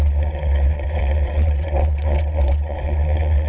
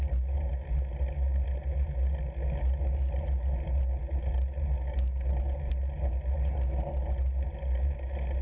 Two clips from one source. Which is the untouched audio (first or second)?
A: second